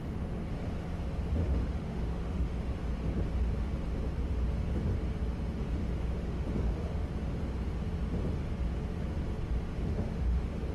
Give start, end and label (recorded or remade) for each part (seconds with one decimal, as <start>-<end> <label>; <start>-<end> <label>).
0.0-1.4 recorded; 1.4-2.7 remade; 2.7-5.8 recorded; 5.8-6.5 remade; 6.5-9.7 recorded; 9.7-10.7 remade